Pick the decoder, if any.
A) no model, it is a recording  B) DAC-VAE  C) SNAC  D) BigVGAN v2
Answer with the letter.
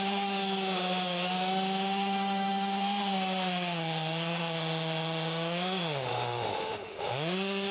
B